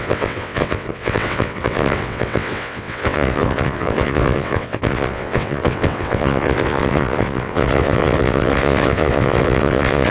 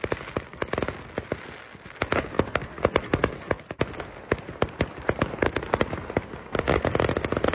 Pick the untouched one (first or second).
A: second